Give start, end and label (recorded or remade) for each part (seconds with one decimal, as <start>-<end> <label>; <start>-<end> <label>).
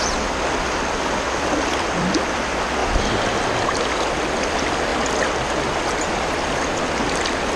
0.0-2.8 recorded; 2.8-3.6 remade; 3.6-7.6 recorded